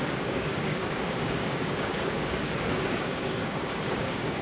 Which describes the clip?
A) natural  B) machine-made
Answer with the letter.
B